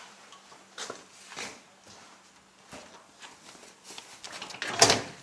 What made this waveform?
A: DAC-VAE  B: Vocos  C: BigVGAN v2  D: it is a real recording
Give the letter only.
D